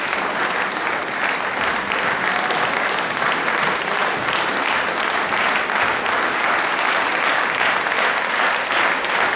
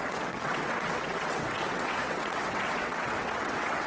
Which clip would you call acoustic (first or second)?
first